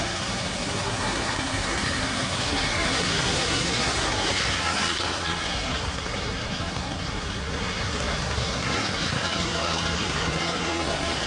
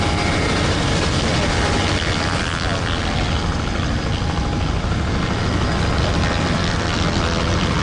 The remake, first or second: first